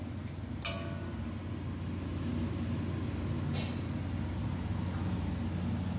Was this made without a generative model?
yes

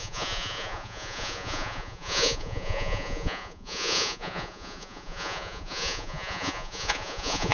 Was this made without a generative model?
no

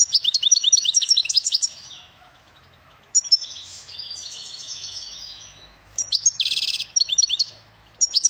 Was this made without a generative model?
no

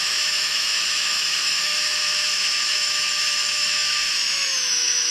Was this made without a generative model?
no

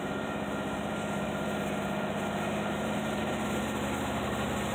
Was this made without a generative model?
no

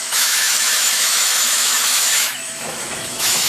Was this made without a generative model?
no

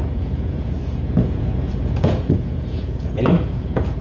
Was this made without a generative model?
no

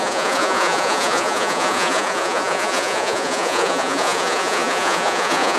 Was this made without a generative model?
no